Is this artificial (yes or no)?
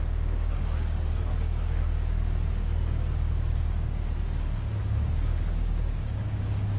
yes